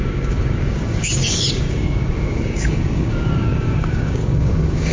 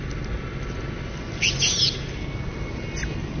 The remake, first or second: first